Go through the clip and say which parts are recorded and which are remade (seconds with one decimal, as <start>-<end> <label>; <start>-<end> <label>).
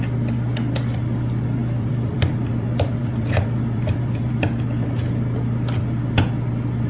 0.0-1.6 recorded; 1.6-4.3 remade; 4.3-6.9 recorded